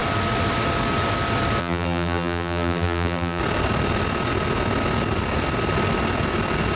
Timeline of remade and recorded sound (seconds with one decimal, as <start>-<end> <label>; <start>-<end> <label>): 0.0-1.6 recorded; 1.6-3.4 remade; 3.4-6.8 recorded